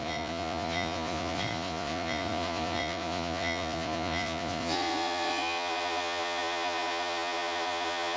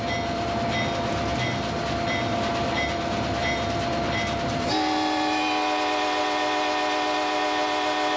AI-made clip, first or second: first